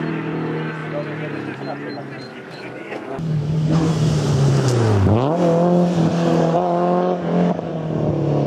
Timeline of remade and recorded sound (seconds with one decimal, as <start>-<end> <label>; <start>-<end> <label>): 0.0-2.3 recorded; 2.3-3.9 remade; 3.9-6.1 recorded; 6.1-7.7 remade; 7.7-8.5 recorded